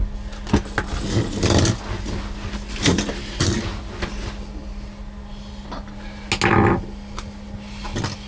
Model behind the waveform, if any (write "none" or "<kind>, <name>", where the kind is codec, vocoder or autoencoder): none